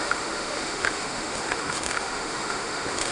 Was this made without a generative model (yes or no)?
no